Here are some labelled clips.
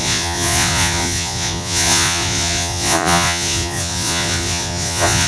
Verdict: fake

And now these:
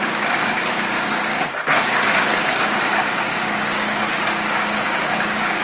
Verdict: fake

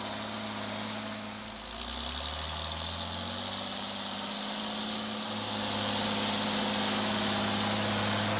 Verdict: real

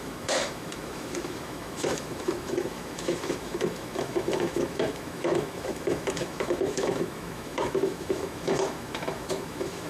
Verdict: fake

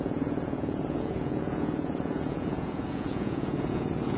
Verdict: fake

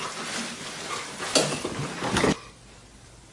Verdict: real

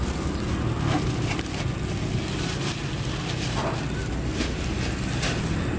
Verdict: real